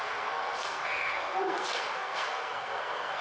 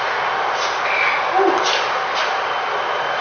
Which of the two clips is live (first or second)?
second